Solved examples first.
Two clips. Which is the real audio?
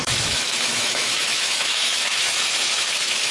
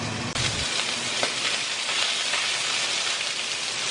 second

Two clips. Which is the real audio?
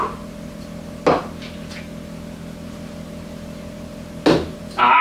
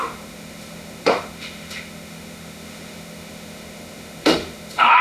first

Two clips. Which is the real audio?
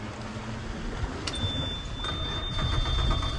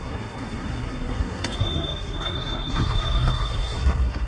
first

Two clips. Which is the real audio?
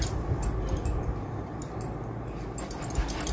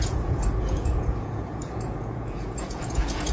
first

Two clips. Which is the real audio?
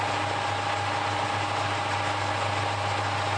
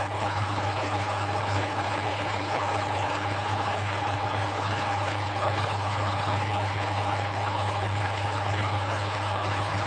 first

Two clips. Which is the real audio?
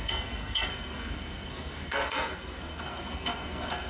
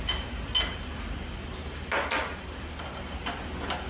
second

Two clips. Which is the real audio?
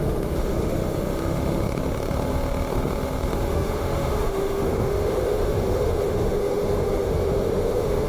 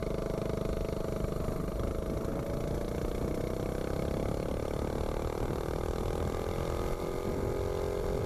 second